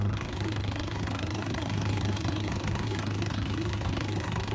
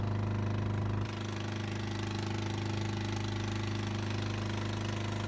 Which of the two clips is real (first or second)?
second